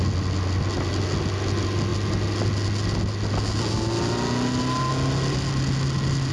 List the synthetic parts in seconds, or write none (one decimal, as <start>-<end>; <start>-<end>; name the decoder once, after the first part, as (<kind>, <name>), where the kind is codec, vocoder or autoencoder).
none